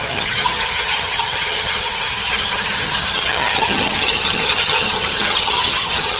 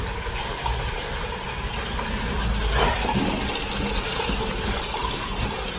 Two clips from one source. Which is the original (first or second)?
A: second